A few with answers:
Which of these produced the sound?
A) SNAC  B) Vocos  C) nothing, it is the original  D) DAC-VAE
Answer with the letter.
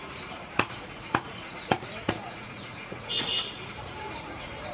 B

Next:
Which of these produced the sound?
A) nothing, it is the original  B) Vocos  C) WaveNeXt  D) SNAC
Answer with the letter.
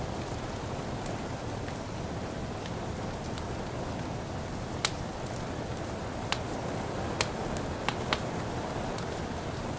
A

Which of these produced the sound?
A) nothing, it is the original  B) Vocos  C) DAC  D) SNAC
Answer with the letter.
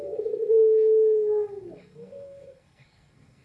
D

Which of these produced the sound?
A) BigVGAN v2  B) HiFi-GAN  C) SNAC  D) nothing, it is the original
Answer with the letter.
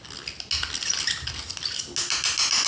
D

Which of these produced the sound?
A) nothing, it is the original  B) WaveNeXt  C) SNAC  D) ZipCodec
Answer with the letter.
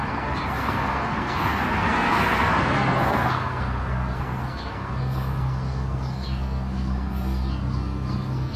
C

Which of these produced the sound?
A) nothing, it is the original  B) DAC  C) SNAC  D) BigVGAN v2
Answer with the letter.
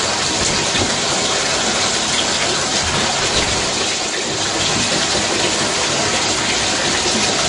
A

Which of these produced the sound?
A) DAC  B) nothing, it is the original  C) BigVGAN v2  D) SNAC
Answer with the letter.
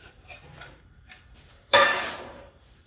C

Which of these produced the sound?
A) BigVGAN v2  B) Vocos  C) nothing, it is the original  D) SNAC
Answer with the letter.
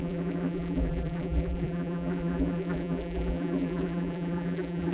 A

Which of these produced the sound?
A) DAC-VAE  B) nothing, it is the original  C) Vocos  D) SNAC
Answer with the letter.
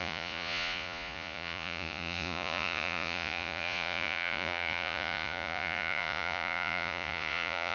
C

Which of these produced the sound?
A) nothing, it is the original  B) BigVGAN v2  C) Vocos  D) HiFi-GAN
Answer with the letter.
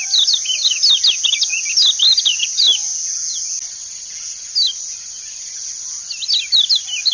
A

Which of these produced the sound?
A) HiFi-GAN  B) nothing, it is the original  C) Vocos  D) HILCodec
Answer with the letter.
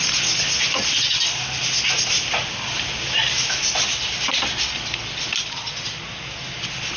B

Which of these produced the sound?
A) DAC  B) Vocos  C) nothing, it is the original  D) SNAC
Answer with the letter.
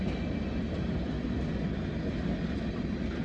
C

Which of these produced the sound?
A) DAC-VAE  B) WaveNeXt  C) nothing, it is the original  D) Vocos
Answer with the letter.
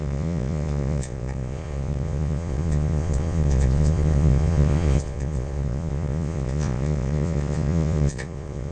D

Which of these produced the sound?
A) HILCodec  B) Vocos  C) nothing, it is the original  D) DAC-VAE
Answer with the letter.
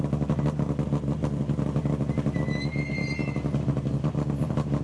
C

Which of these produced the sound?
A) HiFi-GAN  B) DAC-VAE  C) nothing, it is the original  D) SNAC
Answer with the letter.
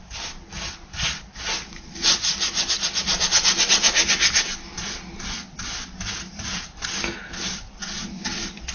C